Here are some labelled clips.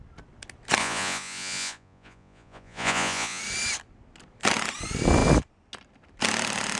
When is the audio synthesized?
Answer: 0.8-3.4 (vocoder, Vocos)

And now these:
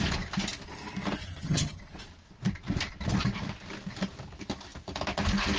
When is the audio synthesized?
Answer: 1.2-1.8 (vocoder, HiFi-GAN)

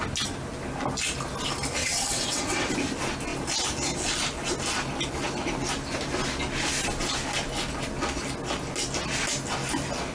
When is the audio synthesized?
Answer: 1.8-2.7 (vocoder, WaveNeXt)